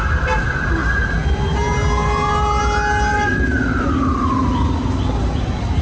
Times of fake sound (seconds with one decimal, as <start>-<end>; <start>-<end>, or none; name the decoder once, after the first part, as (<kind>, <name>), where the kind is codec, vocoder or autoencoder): 3.1-3.8 (autoencoder, DAC-VAE)